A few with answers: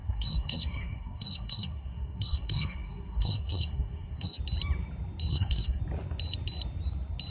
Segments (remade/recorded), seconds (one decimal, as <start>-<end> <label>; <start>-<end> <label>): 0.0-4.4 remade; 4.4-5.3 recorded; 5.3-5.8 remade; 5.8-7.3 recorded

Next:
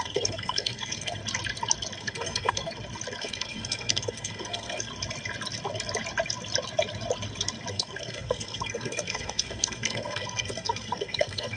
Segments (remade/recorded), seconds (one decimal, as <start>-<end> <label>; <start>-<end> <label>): 0.0-1.2 remade; 1.2-2.0 recorded; 2.0-2.7 remade; 2.7-3.2 recorded; 3.2-4.9 remade; 4.9-7.7 recorded; 7.7-11.6 remade

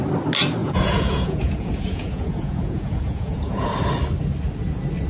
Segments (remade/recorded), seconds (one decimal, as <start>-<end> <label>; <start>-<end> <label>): 0.0-0.6 recorded; 0.6-3.7 remade; 3.7-5.1 recorded